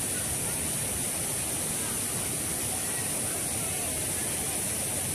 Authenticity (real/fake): real